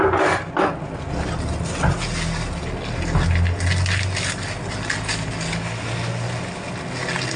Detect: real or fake real